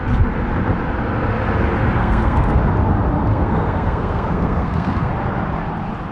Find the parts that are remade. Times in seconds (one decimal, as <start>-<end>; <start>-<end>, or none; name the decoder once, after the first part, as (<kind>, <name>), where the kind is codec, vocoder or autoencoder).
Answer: 2.0-2.6 (codec, SNAC); 3.3-5.1